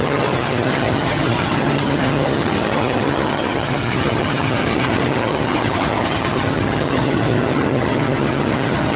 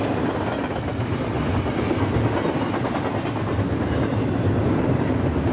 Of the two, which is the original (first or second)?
second